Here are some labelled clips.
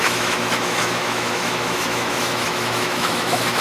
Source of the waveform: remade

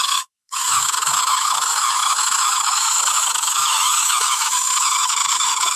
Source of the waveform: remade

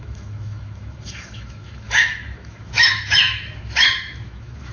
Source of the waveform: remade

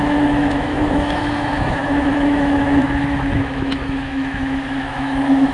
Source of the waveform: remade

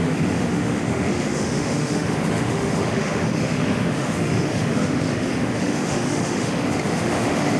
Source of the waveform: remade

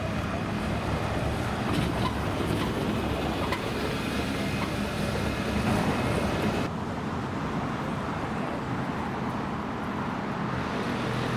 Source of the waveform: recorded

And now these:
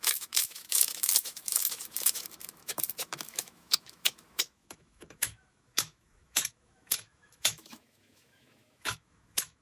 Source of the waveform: remade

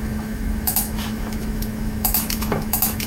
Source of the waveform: remade